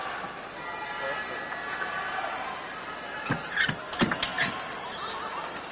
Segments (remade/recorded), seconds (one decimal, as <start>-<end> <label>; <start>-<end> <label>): 0.0-5.7 recorded